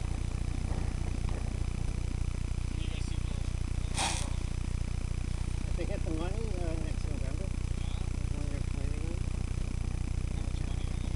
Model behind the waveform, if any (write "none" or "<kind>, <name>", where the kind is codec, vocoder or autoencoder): none